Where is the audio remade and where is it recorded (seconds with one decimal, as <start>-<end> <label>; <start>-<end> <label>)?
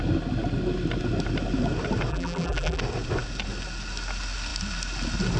0.0-2.1 recorded; 2.1-2.8 remade; 2.8-5.4 recorded